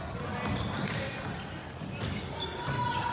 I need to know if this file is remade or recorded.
recorded